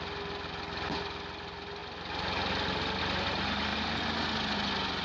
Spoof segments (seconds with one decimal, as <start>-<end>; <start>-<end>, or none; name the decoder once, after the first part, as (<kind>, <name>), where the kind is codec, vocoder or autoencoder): none